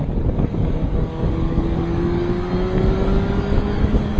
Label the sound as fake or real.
fake